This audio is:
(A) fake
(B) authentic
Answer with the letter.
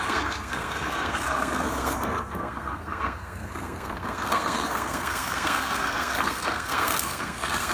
A